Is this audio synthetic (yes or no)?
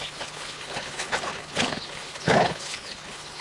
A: yes